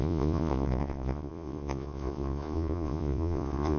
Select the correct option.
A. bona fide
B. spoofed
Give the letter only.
B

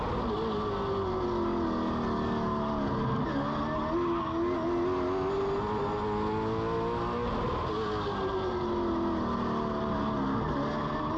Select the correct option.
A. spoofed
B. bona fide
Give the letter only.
B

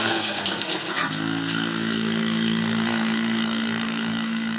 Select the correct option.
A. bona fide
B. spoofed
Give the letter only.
B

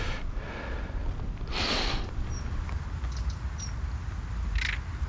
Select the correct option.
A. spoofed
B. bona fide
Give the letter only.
B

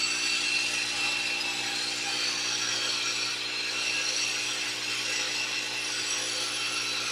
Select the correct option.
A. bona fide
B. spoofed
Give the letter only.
A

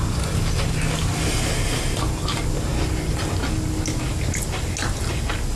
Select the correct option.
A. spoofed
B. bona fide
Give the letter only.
B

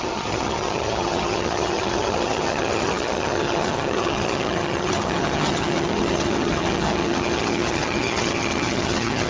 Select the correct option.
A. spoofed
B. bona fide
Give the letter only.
A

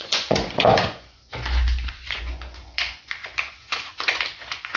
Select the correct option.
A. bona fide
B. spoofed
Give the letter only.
B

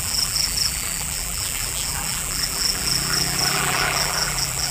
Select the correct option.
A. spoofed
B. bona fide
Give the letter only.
A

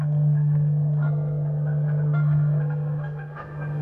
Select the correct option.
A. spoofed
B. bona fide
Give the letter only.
A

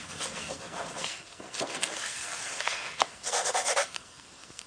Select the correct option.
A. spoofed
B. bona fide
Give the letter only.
A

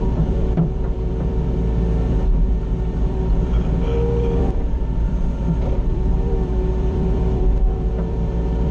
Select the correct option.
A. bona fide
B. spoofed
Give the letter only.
B